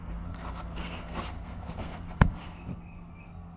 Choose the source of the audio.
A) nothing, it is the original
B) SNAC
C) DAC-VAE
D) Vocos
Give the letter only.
B